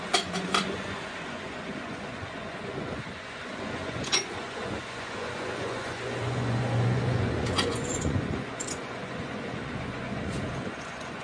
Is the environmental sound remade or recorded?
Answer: remade